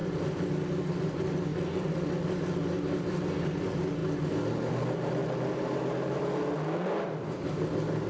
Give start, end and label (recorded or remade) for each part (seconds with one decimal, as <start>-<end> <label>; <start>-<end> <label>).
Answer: 0.0-8.1 recorded